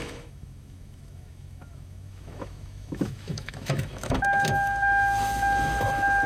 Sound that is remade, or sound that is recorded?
remade